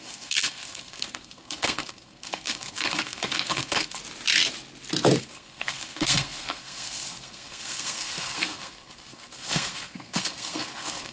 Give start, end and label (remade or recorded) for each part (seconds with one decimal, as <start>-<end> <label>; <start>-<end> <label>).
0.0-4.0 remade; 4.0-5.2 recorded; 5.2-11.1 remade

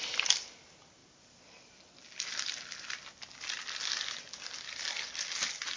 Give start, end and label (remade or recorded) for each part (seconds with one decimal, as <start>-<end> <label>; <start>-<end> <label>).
0.0-5.8 recorded

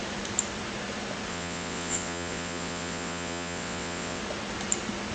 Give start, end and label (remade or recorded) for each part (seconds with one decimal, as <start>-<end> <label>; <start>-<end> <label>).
0.0-1.3 recorded; 1.3-4.2 remade; 4.2-5.1 recorded

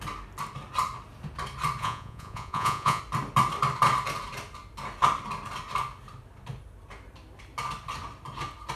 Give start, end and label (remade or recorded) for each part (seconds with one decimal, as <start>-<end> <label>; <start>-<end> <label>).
0.0-1.8 recorded; 1.8-3.0 remade; 3.0-8.8 recorded

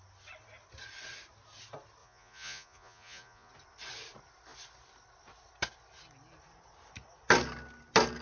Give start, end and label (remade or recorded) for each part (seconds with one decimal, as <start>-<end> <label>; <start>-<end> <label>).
0.0-2.0 recorded; 2.0-3.5 remade; 3.5-8.2 recorded